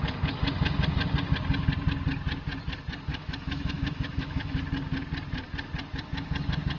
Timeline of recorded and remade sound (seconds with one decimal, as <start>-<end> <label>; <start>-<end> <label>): 0.0-3.1 recorded; 3.1-4.6 remade; 4.6-6.8 recorded

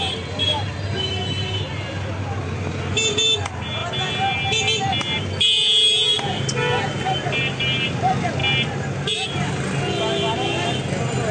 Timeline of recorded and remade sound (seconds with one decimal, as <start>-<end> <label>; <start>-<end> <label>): 0.0-11.3 recorded